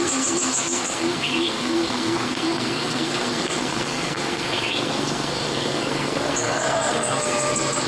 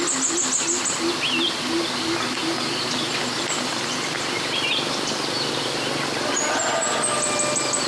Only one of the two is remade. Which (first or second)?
first